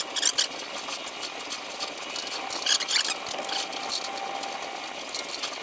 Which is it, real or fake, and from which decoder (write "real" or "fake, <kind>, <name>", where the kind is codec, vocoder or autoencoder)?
real